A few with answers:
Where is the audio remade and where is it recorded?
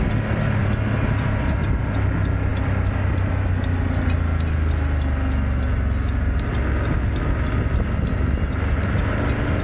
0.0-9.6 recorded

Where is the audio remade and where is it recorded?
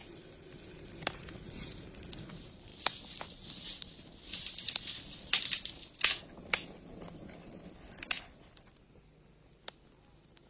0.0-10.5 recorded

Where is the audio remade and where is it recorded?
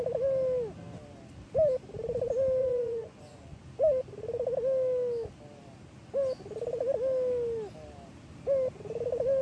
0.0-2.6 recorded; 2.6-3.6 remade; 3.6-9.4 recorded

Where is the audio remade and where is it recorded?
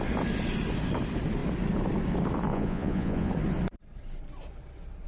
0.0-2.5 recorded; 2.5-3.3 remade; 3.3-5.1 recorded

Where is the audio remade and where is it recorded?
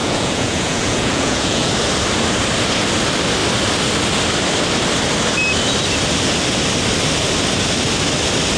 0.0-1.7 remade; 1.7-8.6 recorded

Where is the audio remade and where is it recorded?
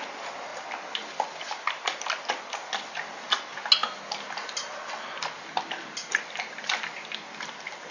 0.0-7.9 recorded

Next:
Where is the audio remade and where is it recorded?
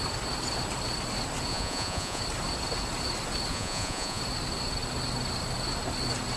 0.0-1.5 recorded; 1.5-2.2 remade; 2.2-3.5 recorded; 3.5-4.2 remade; 4.2-6.4 recorded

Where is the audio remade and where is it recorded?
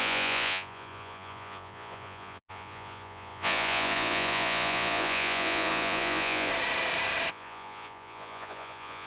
0.0-6.5 remade; 6.5-7.3 recorded; 7.3-9.1 remade